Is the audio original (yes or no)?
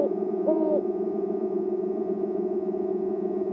no